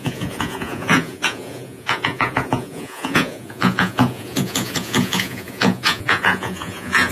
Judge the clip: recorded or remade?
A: remade